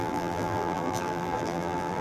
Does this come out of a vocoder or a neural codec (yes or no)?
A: yes